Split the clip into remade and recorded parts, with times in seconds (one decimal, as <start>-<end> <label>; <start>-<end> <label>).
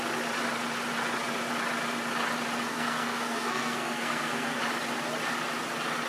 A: 0.0-2.7 recorded; 2.7-4.6 remade; 4.6-6.1 recorded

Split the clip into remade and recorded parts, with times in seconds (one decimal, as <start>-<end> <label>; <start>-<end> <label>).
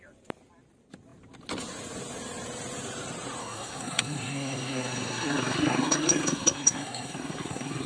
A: 0.0-3.4 recorded; 3.4-7.9 remade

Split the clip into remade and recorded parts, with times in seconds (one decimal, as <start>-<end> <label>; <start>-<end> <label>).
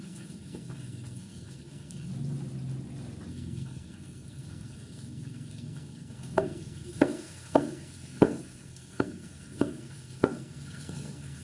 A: 0.0-2.1 remade; 2.1-3.3 recorded; 3.3-11.4 remade